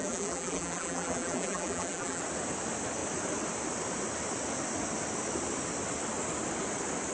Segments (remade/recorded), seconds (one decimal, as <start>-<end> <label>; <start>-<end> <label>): 0.0-2.2 remade; 2.2-7.1 recorded